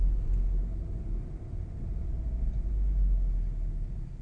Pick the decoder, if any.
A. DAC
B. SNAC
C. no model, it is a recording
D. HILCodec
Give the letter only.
C